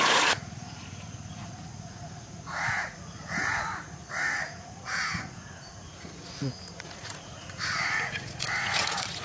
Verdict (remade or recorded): remade